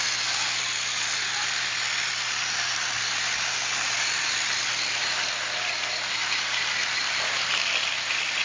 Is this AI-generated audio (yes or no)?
no